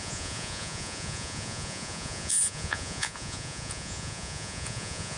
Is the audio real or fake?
fake